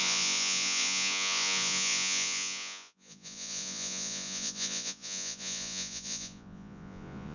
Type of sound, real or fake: fake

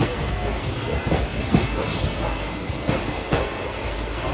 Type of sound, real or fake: fake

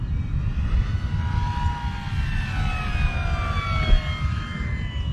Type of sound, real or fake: real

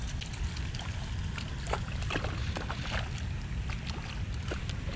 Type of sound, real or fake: real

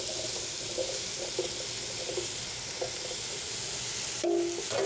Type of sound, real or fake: real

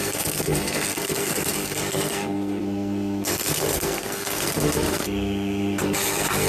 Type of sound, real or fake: fake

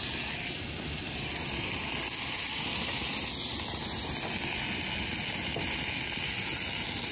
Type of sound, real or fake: real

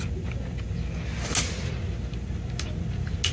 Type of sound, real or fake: real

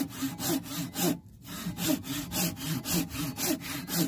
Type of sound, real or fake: real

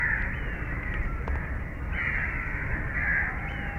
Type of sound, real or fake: real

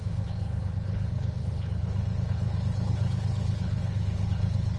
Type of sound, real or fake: fake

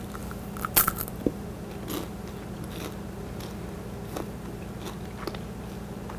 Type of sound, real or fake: real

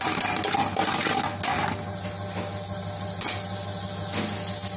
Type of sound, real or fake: real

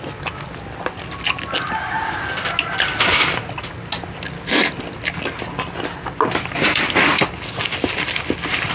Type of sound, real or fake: real